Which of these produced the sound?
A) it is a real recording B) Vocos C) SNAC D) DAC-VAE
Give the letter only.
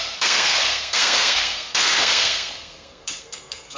C